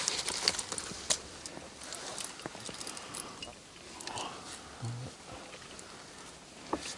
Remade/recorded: recorded